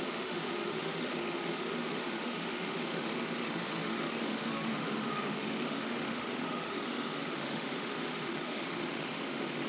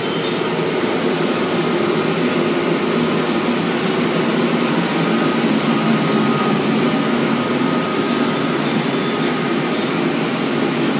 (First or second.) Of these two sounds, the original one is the second